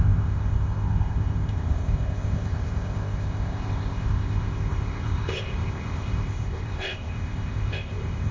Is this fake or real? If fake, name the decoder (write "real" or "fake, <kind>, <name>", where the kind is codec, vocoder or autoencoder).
fake, codec, ZipCodec